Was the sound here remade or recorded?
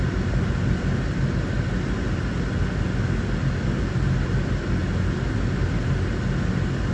recorded